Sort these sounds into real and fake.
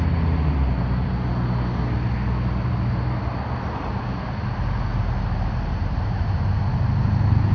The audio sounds real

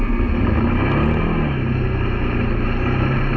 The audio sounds real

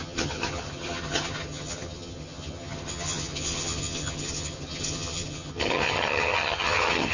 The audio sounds fake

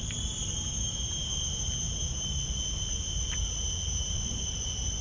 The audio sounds real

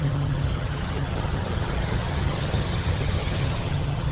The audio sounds fake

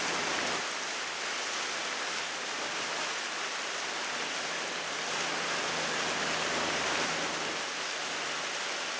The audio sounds real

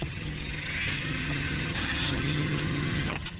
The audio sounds fake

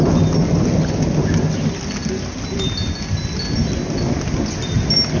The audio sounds real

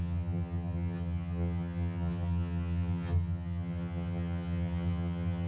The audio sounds fake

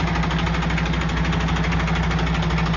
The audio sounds real